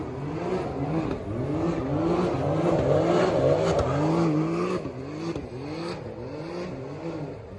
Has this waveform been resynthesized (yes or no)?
no